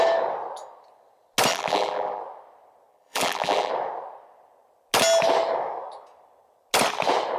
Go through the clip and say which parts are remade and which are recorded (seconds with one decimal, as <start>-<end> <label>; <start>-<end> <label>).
0.0-1.5 recorded; 1.5-2.2 remade; 2.2-2.9 recorded; 2.9-3.7 remade; 3.7-7.4 recorded